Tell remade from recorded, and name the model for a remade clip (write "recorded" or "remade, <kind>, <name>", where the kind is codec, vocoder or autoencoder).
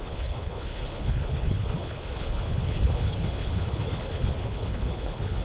remade, codec, HILCodec